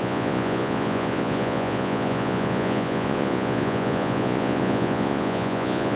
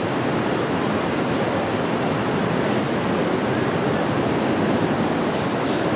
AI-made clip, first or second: first